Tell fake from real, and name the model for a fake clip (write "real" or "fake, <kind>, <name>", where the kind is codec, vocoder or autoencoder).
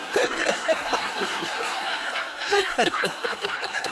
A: fake, codec, SNAC